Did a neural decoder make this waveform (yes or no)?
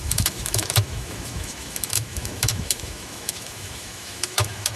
yes